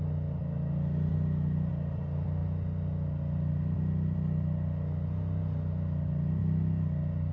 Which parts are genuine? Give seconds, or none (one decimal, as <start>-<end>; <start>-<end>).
0.0-7.3